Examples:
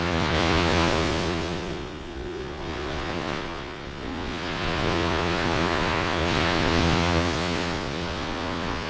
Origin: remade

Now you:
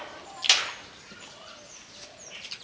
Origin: recorded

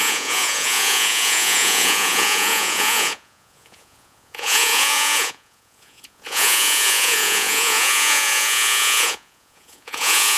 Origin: remade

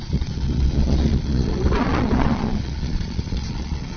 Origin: remade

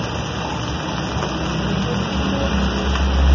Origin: recorded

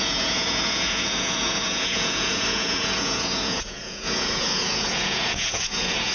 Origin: remade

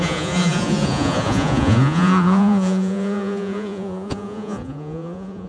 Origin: remade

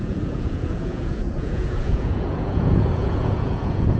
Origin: remade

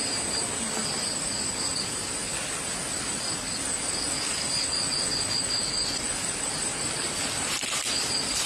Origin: recorded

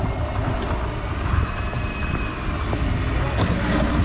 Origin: recorded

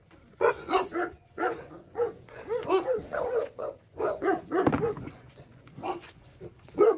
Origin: remade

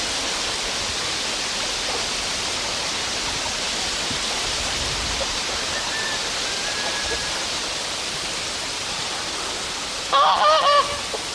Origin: recorded